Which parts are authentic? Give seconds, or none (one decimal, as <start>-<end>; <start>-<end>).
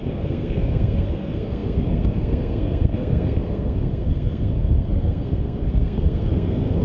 none